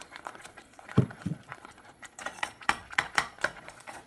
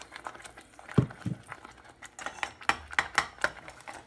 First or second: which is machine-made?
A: first